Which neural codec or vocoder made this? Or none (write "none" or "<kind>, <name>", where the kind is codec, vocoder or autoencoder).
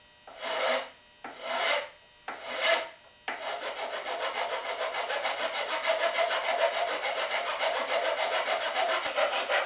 none